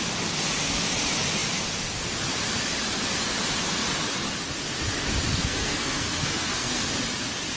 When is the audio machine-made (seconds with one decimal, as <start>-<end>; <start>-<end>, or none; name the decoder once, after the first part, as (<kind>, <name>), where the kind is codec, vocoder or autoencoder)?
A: 5.3-6.9 (codec, SNAC)